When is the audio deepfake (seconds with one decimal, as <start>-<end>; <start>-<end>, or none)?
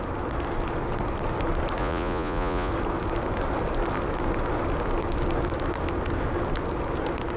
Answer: 1.8-2.7